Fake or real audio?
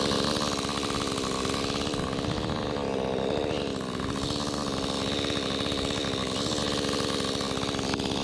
real